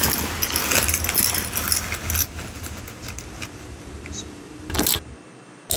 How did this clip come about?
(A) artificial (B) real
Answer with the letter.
B